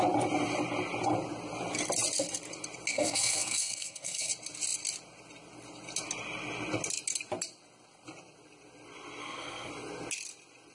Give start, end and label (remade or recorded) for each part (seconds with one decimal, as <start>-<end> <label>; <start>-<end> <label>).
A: 0.0-2.9 recorded; 2.9-4.3 remade; 4.3-9.2 recorded; 9.2-9.7 remade; 9.7-10.7 recorded